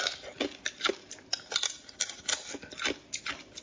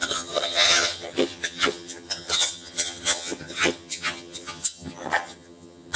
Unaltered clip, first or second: first